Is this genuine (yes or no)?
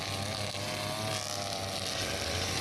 yes